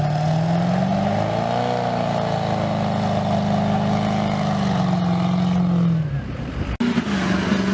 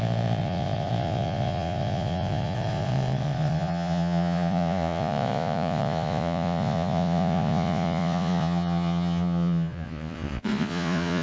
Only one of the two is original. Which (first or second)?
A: first